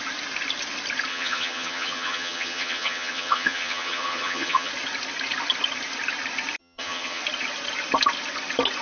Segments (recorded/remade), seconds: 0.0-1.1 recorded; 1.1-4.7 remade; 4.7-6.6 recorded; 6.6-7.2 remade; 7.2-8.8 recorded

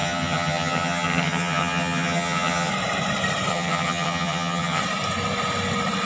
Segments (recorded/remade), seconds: 0.0-2.7 remade; 2.7-3.5 recorded; 3.5-4.8 remade; 4.8-6.1 recorded

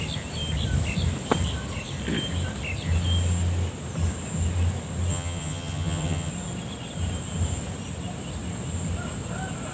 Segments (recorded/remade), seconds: 0.0-5.1 recorded; 5.1-6.3 remade; 6.3-9.7 recorded

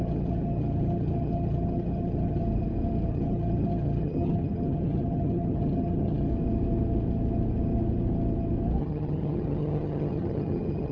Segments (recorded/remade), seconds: 0.0-2.4 remade; 2.4-3.1 recorded; 3.1-6.3 remade; 6.3-8.8 recorded; 8.8-10.9 remade